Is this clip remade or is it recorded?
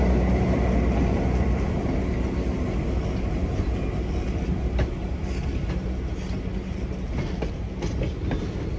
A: recorded